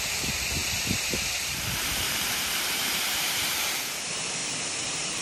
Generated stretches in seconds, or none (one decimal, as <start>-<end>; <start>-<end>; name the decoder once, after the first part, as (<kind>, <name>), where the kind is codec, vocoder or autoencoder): 0.6-3.7 (vocoder, BigVGAN v2)